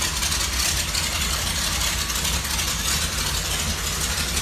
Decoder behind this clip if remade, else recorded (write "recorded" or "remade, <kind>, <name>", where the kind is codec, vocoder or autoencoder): recorded